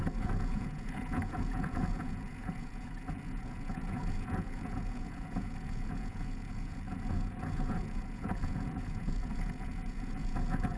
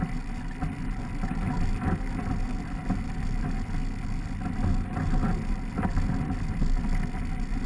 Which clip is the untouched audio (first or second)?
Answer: second